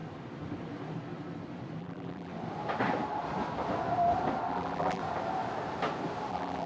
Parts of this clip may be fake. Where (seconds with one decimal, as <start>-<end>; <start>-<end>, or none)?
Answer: 1.8-2.3; 4.5-5.0; 6.3-6.7